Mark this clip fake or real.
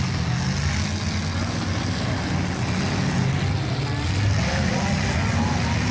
real